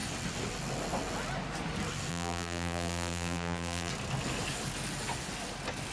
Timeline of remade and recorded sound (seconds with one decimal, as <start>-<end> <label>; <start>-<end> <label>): 0.0-2.1 recorded; 2.1-3.9 remade; 3.9-5.9 recorded